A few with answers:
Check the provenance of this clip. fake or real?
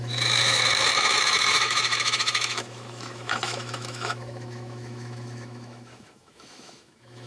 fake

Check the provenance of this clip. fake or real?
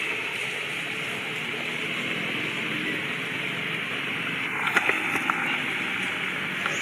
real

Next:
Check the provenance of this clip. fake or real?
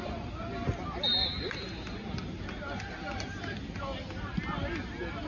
real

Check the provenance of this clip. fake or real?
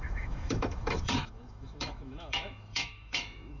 fake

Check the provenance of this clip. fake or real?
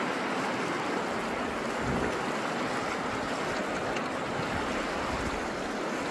real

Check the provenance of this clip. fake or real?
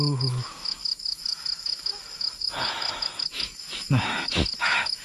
fake